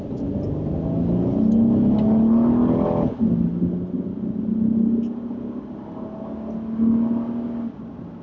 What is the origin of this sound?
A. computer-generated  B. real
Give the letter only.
B